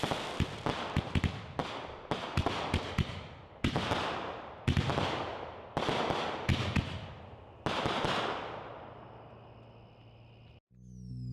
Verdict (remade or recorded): recorded